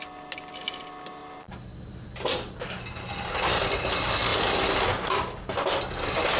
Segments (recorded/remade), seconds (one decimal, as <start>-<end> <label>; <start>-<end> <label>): 0.0-1.2 recorded; 1.2-3.7 remade; 3.7-4.3 recorded; 4.3-5.8 remade; 5.8-6.4 recorded